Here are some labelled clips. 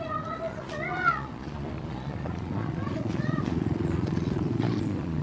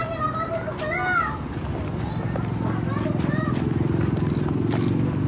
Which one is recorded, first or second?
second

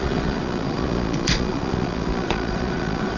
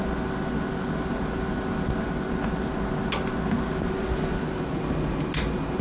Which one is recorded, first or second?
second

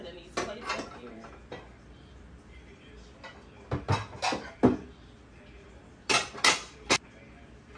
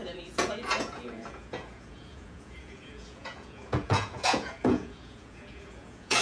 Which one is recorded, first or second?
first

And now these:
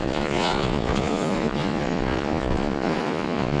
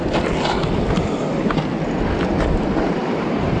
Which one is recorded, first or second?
second